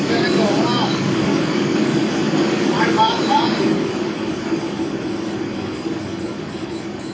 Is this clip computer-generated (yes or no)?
yes